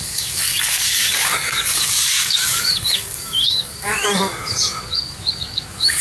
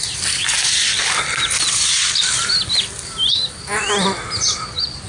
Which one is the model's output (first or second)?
first